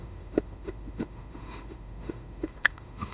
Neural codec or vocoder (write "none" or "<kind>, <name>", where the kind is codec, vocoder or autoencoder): autoencoder, DAC-VAE